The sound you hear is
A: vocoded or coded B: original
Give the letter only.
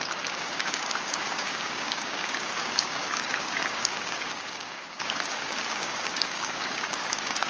A